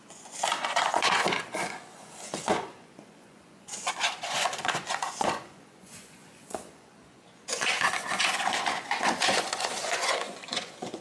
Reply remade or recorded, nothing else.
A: remade